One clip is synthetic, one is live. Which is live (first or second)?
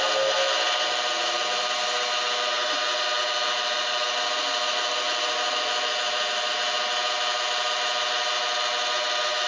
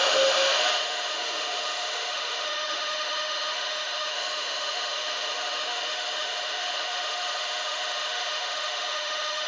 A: first